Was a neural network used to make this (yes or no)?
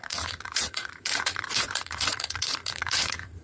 yes